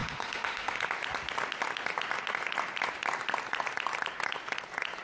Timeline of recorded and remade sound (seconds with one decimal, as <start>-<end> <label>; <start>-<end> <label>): 0.0-0.8 remade; 0.8-5.0 recorded